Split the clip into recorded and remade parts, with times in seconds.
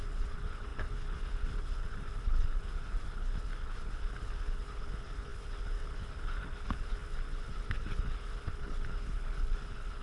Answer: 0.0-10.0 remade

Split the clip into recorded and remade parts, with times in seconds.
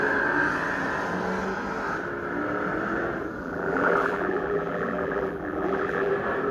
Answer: 0.0-3.4 recorded; 3.4-6.1 remade; 6.1-6.5 recorded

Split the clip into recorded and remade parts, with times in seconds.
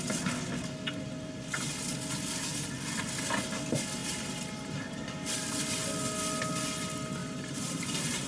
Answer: 0.0-4.0 recorded; 4.0-5.1 remade; 5.1-7.2 recorded; 7.2-8.3 remade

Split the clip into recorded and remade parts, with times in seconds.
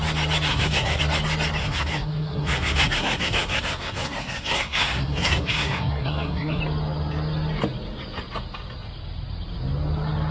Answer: 0.0-0.5 recorded; 0.5-1.0 remade; 1.0-1.6 recorded; 1.6-6.6 remade; 6.6-10.3 recorded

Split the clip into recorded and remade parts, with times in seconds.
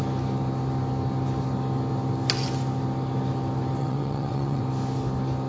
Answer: 0.0-3.8 recorded; 3.8-4.6 remade; 4.6-5.5 recorded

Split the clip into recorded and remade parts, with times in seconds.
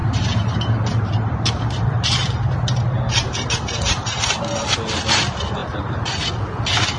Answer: 0.0-4.2 remade; 4.2-5.6 recorded; 5.6-6.3 remade; 6.3-7.0 recorded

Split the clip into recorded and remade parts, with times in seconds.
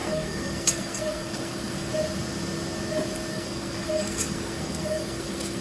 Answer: 0.0-1.9 remade; 1.9-3.3 recorded; 3.3-5.6 remade